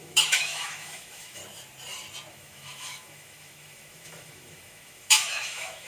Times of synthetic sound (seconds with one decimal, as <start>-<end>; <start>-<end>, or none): 0.0-1.4; 2.3-5.9